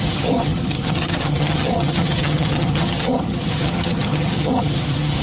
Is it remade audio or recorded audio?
remade